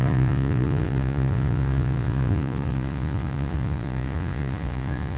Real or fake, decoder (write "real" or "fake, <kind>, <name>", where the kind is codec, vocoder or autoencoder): fake, vocoder, Vocos